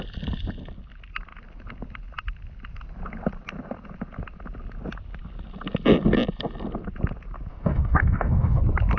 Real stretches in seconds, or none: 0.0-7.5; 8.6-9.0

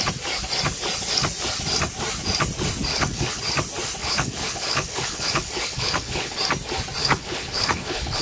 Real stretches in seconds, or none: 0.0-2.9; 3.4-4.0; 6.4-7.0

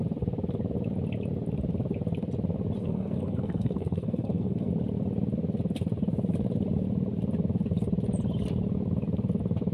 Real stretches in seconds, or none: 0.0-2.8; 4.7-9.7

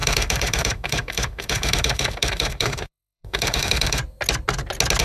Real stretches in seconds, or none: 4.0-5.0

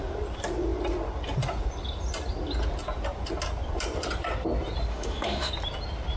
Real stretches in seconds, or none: 0.0-4.9; 5.5-6.2